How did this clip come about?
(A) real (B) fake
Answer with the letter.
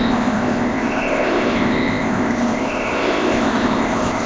B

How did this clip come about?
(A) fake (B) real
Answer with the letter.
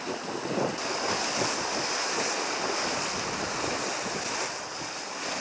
B